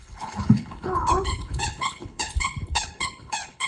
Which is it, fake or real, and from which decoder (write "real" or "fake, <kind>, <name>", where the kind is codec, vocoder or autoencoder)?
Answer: fake, codec, HILCodec